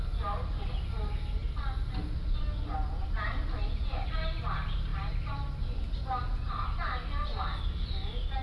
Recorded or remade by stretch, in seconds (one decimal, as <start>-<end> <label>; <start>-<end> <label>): 0.0-8.4 recorded